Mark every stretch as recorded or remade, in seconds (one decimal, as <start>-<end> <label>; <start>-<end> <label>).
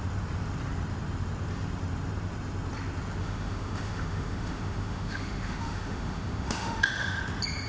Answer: 0.0-3.2 recorded; 3.2-7.2 remade; 7.2-7.7 recorded